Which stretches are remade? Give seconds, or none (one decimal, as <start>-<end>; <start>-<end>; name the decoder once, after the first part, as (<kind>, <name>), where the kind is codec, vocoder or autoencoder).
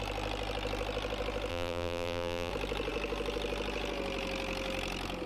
1.5-2.5 (vocoder, BigVGAN v2)